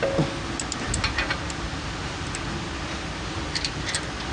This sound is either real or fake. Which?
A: real